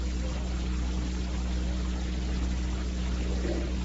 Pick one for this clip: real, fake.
real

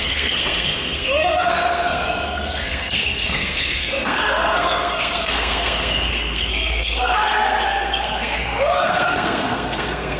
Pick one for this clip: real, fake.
fake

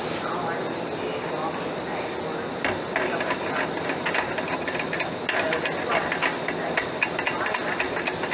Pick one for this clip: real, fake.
real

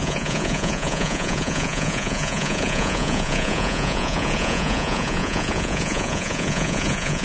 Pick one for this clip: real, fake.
fake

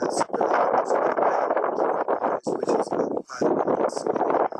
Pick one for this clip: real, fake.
real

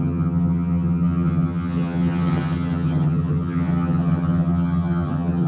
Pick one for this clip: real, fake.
fake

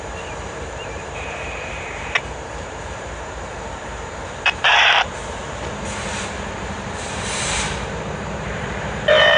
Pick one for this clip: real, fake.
fake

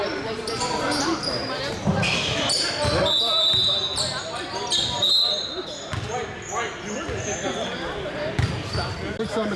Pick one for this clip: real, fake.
real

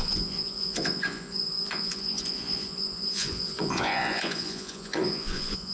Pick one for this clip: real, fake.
fake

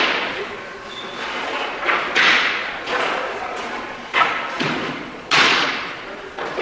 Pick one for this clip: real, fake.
fake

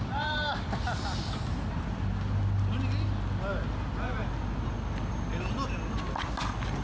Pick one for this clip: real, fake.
real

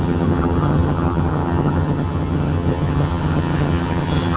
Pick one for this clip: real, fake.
fake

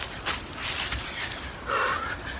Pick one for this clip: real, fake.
real